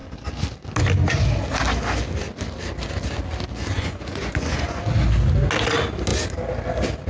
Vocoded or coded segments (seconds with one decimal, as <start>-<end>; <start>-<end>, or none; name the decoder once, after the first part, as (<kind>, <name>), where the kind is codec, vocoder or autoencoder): 3.7-4.8 (vocoder, Vocos)